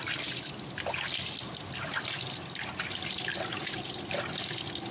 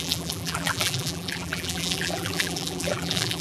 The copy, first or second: second